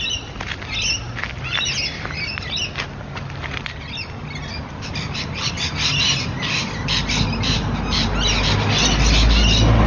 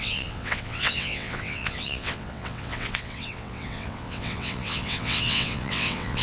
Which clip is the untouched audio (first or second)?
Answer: first